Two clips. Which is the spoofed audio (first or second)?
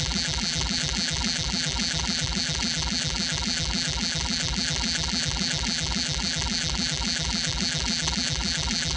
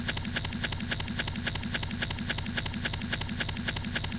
first